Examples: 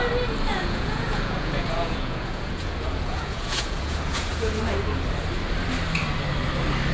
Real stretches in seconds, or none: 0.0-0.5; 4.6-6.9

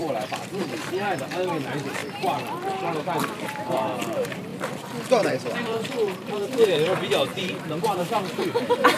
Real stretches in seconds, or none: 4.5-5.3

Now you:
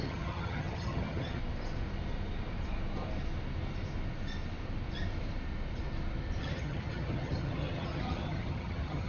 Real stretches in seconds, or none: 1.4-6.4